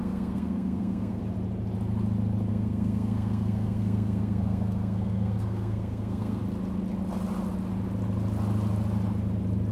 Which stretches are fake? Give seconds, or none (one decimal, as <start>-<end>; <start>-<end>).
0.0-1.2; 2.5-6.4